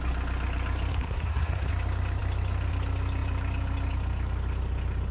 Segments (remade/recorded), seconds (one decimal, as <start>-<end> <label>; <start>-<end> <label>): 0.0-0.9 recorded; 0.9-1.7 remade; 1.7-5.1 recorded